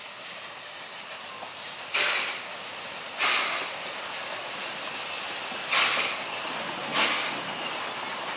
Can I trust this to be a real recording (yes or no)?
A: yes